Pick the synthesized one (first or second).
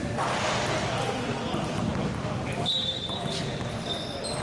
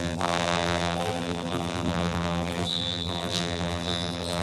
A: second